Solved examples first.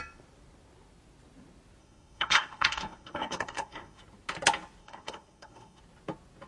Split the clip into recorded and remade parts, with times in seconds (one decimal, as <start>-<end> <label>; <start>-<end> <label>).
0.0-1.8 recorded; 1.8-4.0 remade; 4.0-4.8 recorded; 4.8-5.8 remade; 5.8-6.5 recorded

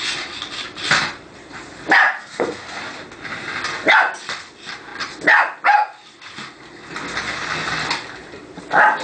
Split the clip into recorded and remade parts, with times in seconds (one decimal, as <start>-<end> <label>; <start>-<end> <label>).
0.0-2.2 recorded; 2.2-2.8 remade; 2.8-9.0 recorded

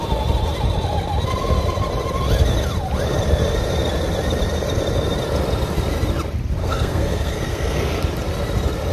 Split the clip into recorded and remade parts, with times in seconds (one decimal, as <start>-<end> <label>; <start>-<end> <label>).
0.0-6.6 recorded; 6.6-8.0 remade; 8.0-8.9 recorded